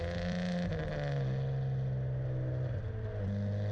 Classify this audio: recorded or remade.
recorded